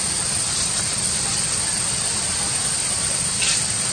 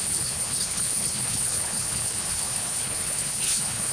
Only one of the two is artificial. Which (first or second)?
second